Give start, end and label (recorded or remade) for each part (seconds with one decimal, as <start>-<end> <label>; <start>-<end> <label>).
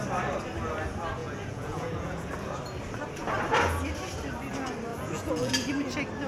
0.0-1.2 recorded; 1.2-2.3 remade; 2.3-4.9 recorded; 4.9-5.5 remade; 5.5-6.3 recorded